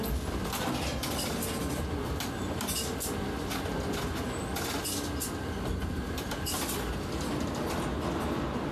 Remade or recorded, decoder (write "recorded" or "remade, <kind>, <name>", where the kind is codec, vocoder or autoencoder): recorded